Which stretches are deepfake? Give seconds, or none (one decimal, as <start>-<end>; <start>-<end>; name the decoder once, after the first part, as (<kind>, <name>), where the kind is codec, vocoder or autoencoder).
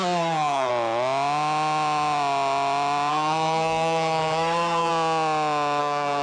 0.0-0.7 (codec, SNAC); 3.1-4.9; 5.8-6.2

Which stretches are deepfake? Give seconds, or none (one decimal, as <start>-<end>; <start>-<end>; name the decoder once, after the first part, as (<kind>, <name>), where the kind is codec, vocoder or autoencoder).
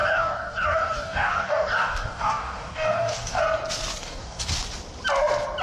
0.0-3.4 (codec, DAC); 4.0-4.5